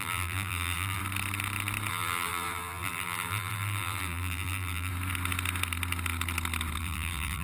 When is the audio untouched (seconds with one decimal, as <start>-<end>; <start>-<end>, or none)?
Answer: 1.0-1.9; 4.9-6.8